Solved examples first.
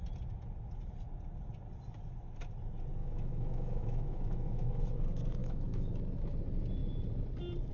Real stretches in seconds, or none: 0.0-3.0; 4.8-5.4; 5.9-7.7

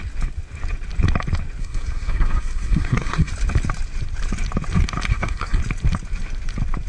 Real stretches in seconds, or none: 0.0-1.6; 3.3-5.1; 5.6-6.9

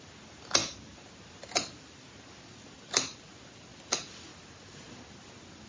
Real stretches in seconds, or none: 0.0-5.7

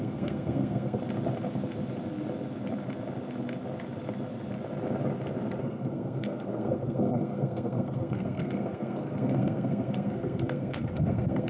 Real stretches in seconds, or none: 1.0-5.6

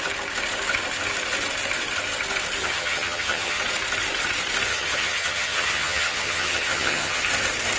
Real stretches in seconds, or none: 0.0-2.6; 3.6-4.7; 7.2-7.8

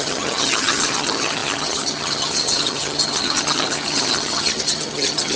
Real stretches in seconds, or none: none

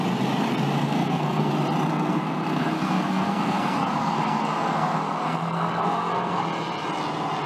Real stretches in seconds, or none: 0.0-0.8; 1.5-1.9; 6.4-7.5